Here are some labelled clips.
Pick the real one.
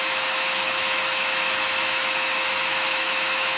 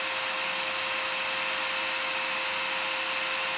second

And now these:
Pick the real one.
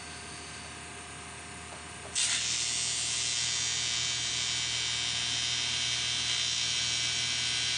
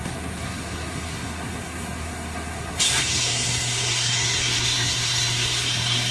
first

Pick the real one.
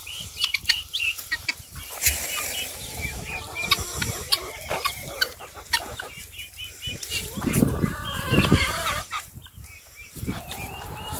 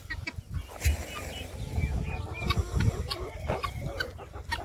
second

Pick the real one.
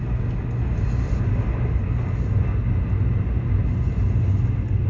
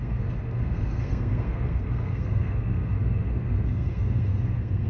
first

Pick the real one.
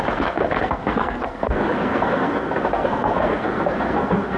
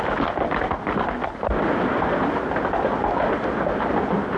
second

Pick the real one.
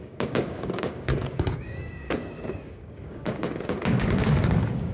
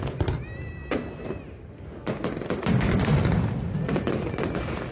second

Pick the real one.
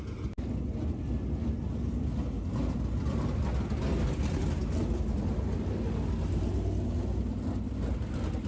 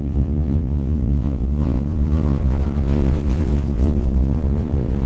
first